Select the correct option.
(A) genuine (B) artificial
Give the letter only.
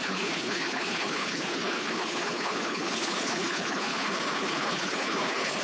B